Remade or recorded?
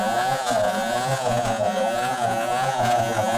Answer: remade